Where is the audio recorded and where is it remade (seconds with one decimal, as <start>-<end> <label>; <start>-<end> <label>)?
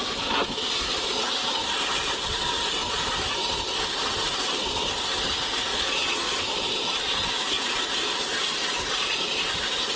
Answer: 0.0-5.7 recorded; 5.7-6.4 remade; 6.4-10.0 recorded